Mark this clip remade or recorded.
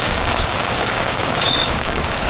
remade